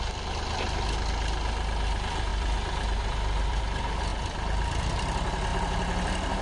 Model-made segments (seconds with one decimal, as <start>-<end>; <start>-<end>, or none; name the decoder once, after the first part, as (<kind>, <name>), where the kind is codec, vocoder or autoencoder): 2.3-3.6 (vocoder, BigVGAN v2)